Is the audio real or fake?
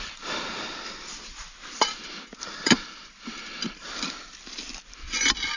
fake